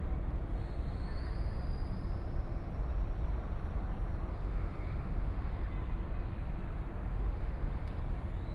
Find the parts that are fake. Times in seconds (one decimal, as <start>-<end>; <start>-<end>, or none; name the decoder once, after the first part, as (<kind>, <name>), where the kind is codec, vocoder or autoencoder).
4.3-5.7 (autoencoder, DAC-VAE); 7.1-8.0